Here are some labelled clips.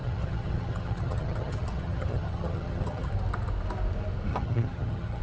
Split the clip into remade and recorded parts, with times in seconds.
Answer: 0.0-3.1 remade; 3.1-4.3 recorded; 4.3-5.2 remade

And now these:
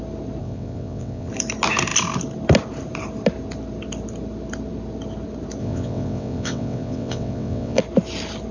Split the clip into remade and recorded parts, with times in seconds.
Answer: 0.0-0.4 recorded; 0.4-1.3 remade; 1.3-5.6 recorded; 5.6-7.8 remade; 7.8-8.5 recorded

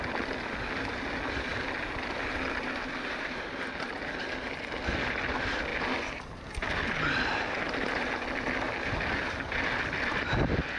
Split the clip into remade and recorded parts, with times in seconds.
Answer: 0.0-10.8 recorded

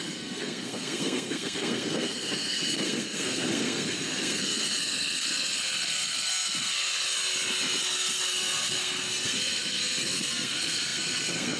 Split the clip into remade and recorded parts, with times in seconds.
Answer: 0.0-6.9 remade; 6.9-7.8 recorded; 7.8-11.6 remade